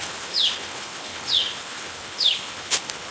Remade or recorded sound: remade